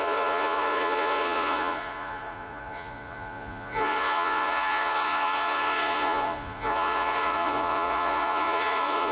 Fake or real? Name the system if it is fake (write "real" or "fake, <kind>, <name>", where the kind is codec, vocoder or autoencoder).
fake, vocoder, Vocos